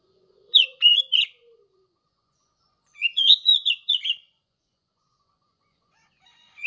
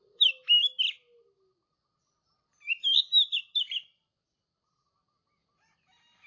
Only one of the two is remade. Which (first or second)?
first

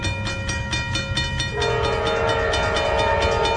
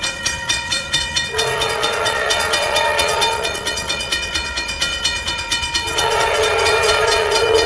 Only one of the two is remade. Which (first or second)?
second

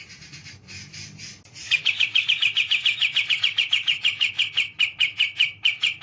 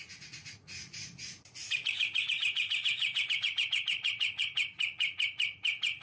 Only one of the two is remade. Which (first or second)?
second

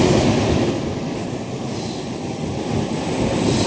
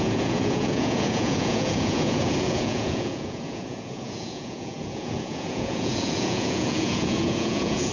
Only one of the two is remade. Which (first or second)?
second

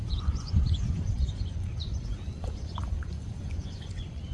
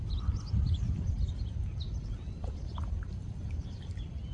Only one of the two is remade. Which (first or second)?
first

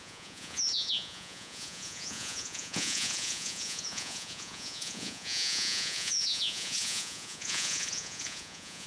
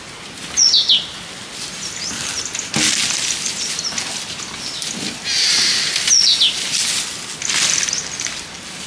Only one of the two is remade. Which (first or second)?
first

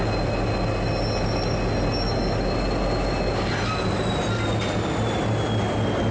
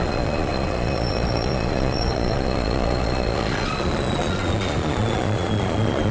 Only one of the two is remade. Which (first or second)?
second